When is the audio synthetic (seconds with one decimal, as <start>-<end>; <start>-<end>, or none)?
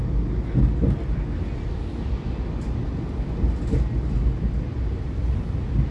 none